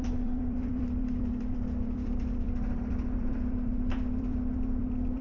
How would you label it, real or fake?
fake